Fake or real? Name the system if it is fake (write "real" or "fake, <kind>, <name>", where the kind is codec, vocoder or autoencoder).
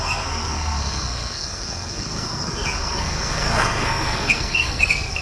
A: fake, codec, SNAC